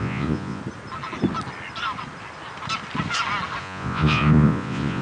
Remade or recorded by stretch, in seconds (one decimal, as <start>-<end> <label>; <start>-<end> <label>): 0.0-0.6 remade; 0.6-3.6 recorded; 3.6-5.0 remade